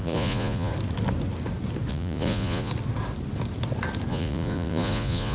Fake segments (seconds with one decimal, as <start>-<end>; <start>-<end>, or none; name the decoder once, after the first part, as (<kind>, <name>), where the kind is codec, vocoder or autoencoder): 0.0-0.7 (vocoder, Vocos); 1.9-2.7; 4.1-5.3